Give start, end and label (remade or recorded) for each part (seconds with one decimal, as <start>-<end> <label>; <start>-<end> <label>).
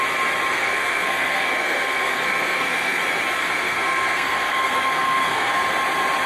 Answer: 0.0-0.5 recorded; 0.5-3.0 remade; 3.0-3.4 recorded; 3.4-5.5 remade; 5.5-6.3 recorded